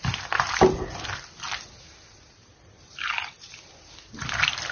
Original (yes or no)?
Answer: no